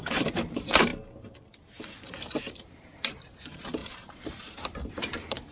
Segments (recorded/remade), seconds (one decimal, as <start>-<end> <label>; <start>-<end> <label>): 0.0-0.9 remade; 0.9-2.1 recorded; 2.1-5.5 remade